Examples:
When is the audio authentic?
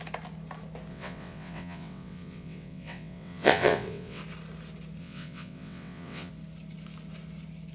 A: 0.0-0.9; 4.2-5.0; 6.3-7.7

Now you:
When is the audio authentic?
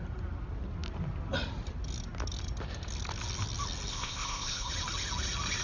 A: 0.0-3.9; 4.7-5.6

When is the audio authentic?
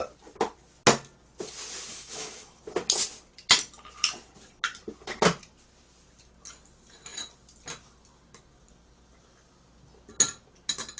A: 0.0-1.9; 2.6-11.0